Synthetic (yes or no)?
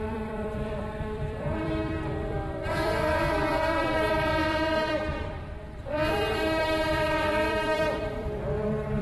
yes